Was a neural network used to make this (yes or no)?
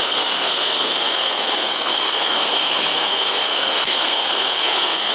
yes